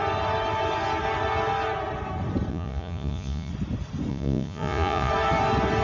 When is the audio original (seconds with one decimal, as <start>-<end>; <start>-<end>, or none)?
0.0-2.5; 3.5-4.1; 5.1-5.8